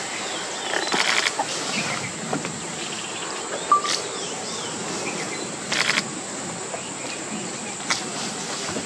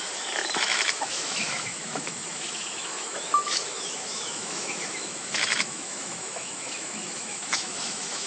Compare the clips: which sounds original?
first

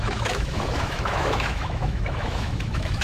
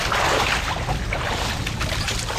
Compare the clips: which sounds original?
second